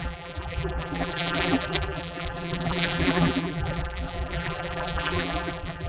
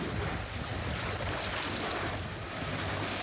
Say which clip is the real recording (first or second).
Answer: second